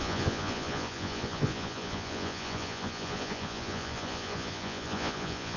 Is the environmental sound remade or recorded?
remade